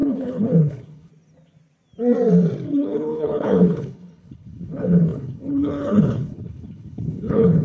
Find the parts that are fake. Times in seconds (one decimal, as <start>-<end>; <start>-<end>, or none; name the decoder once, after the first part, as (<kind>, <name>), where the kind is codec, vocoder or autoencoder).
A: 0.0-1.1 (codec, HILCodec); 2.7-7.6